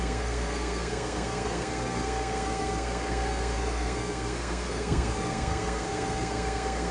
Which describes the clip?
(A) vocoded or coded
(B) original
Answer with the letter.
A